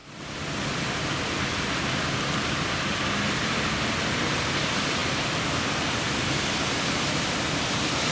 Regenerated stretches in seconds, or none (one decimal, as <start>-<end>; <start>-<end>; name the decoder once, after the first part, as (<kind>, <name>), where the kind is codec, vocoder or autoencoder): none